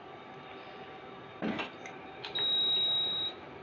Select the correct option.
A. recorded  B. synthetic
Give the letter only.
A